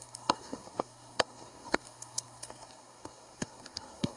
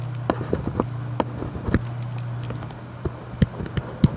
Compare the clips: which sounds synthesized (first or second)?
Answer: first